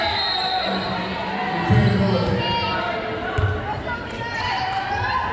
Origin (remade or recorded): recorded